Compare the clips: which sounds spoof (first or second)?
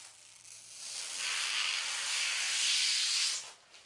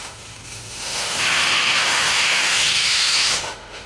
second